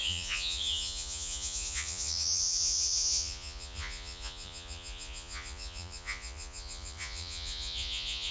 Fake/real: fake